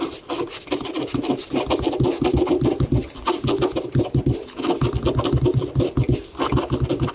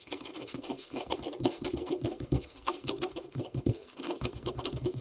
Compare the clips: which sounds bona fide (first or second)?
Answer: first